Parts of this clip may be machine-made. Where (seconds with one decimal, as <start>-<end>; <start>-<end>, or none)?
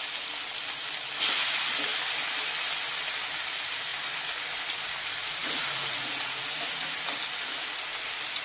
5.4-6.6